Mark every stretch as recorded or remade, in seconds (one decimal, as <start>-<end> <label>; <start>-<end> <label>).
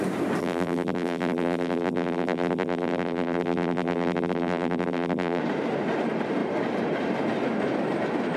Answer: 0.0-0.4 recorded; 0.4-5.4 remade; 5.4-8.4 recorded